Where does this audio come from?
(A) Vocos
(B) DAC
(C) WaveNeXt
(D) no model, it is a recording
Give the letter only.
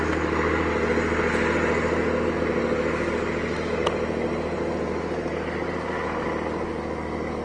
D